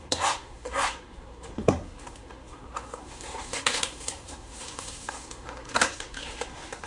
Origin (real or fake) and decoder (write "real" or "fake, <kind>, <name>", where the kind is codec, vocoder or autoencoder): fake, codec, SNAC